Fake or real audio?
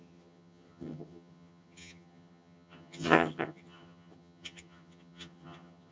fake